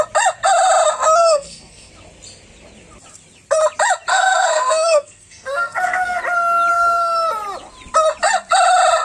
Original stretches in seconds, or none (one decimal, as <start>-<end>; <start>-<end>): 0.0-1.2; 1.9-4.1; 6.2-6.7; 7.3-9.0